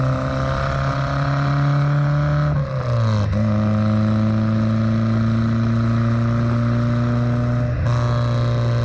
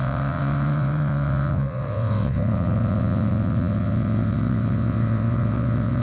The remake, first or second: second